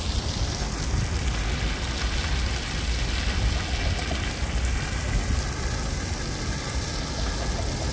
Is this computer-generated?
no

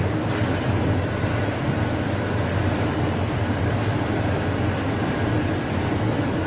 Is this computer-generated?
yes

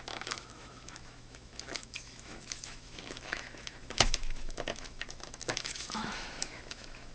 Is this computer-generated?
yes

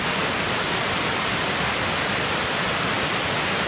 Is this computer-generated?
yes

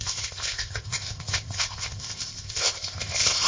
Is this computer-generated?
yes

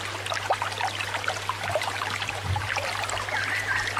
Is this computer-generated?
no